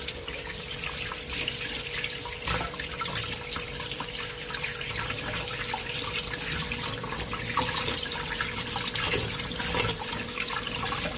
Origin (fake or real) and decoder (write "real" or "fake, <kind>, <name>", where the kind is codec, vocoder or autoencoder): fake, vocoder, BigVGAN v2